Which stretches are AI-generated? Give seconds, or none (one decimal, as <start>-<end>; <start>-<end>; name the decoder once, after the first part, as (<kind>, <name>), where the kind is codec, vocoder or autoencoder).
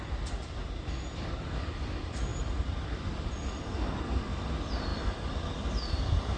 none